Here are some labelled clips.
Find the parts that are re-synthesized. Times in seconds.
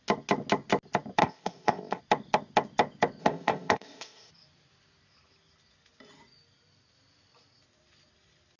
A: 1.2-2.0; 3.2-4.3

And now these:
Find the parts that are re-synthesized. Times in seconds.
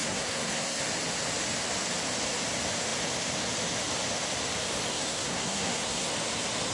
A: 0.0-0.8; 4.9-6.1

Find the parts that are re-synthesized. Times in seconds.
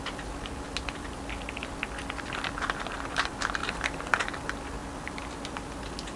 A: none